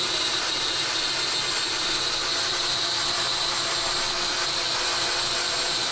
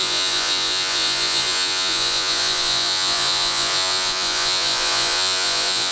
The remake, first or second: second